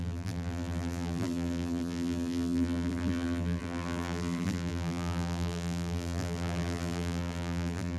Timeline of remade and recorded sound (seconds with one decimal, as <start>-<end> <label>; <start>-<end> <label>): 0.0-8.0 remade

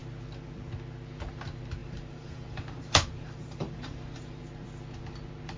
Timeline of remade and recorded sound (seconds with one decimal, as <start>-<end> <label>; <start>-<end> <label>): 0.0-1.8 recorded; 1.8-4.4 remade; 4.4-5.6 recorded

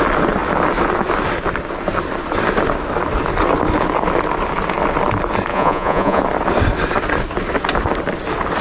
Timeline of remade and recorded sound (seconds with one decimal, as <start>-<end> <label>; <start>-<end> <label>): 0.0-5.5 recorded; 5.5-6.2 remade; 6.2-8.6 recorded

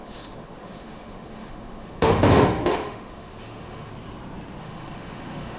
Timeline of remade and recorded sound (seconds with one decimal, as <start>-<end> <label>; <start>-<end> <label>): 0.0-3.9 remade; 3.9-4.6 recorded; 4.6-5.6 remade

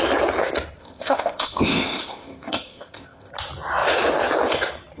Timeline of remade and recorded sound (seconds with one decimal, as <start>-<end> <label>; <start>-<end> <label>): 0.0-0.8 recorded; 0.8-3.3 remade; 3.3-5.0 recorded

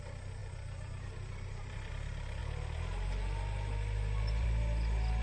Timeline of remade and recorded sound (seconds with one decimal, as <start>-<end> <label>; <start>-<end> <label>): 0.0-0.4 recorded; 0.4-1.9 remade; 1.9-5.2 recorded